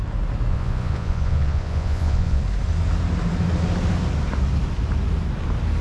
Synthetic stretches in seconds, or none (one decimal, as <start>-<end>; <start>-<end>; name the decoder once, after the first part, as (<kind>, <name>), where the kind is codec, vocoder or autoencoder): 0.5-2.4 (vocoder, Vocos)